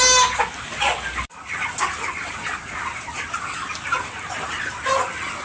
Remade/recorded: recorded